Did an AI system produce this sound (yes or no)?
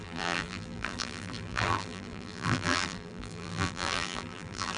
yes